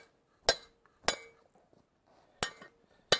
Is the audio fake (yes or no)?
no